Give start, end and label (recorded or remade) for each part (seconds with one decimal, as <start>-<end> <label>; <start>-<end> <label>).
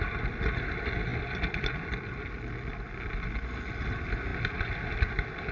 0.0-5.5 recorded